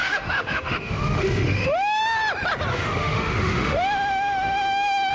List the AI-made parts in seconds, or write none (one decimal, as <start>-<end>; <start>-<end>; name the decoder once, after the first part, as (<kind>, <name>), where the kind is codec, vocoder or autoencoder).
0.0-2.0 (autoencoder, DAC-VAE); 2.7-5.1